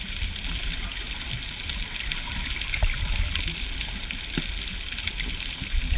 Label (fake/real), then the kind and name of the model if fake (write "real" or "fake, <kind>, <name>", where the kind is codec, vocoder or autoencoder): real